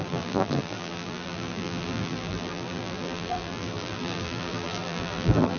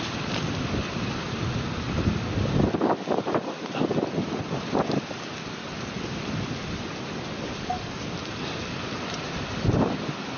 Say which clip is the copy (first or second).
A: first